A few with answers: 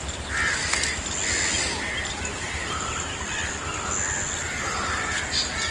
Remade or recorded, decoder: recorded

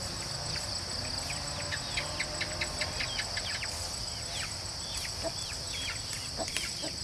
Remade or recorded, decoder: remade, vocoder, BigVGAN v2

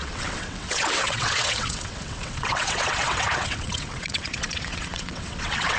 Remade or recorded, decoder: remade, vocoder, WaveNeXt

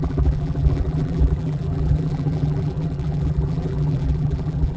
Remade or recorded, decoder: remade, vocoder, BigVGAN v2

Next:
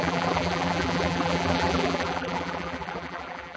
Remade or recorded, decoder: remade, vocoder, BigVGAN v2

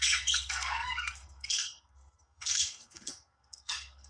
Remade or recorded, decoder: remade, codec, SNAC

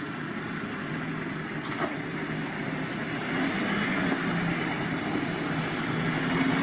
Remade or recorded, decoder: recorded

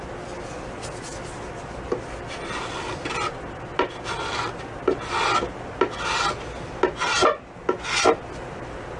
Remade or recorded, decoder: recorded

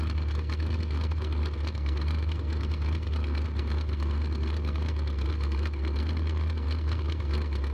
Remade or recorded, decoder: remade, codec, SNAC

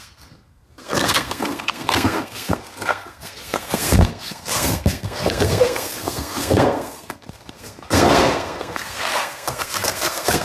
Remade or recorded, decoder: remade, codec, SNAC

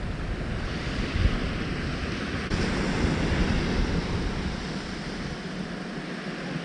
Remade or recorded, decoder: recorded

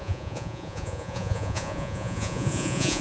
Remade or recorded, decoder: remade, vocoder, Vocos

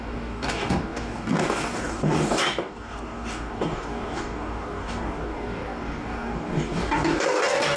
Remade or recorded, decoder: remade, codec, DAC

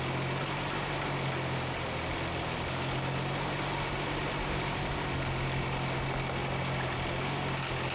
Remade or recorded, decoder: recorded